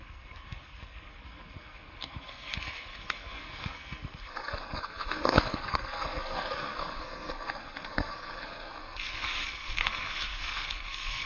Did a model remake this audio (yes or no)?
yes